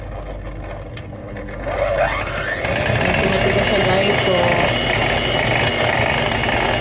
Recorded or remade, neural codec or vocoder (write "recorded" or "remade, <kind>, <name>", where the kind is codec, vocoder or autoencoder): recorded